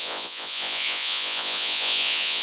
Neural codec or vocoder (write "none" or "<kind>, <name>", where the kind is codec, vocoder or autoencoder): vocoder, Vocos